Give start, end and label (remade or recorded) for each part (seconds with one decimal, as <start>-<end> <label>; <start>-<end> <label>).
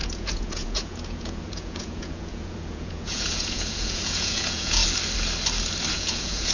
0.0-4.8 remade; 4.8-5.9 recorded; 5.9-6.5 remade